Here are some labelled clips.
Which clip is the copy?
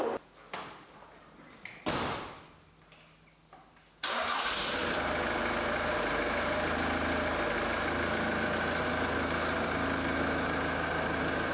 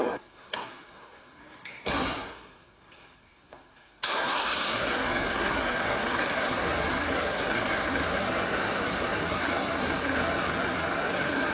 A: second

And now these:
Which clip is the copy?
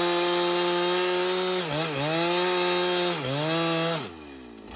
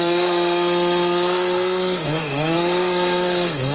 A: second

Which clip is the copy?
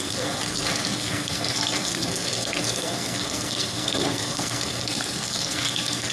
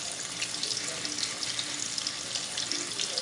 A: first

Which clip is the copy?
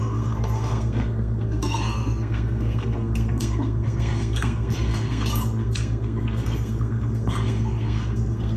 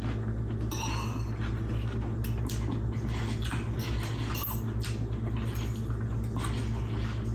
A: first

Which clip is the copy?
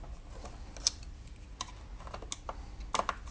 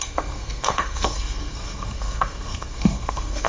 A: second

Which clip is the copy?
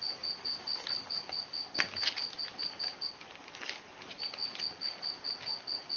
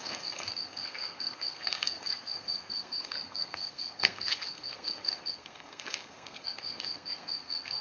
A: second